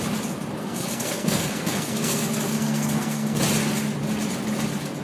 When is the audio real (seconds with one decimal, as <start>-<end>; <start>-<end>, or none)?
0.0-0.6; 3.4-5.0